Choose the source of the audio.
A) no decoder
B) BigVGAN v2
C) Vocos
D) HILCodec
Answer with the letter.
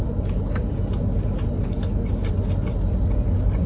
A